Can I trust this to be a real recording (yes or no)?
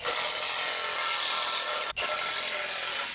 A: yes